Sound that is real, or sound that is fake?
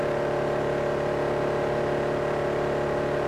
real